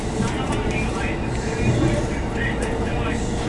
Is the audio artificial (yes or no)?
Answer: no